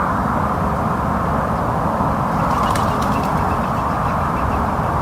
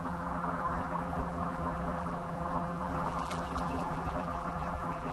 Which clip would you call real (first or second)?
first